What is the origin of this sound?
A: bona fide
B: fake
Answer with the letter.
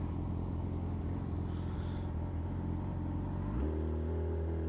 A